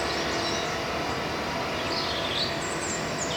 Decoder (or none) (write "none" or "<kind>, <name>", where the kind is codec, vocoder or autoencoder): none